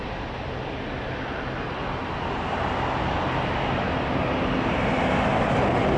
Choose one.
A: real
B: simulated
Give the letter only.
A